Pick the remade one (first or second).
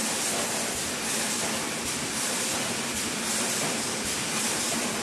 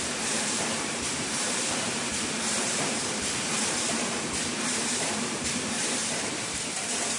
second